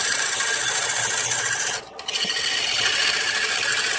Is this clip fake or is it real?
real